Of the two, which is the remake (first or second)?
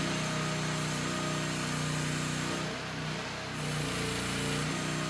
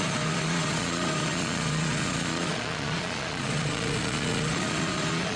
second